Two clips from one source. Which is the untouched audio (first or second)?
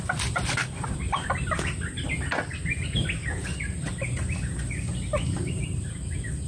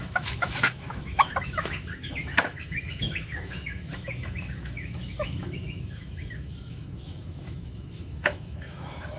first